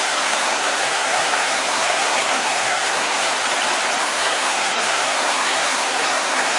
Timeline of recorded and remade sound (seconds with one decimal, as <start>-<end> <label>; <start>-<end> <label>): 0.0-3.3 remade; 3.3-4.0 recorded; 4.0-6.6 remade